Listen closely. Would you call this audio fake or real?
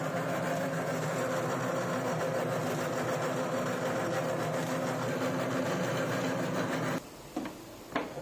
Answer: real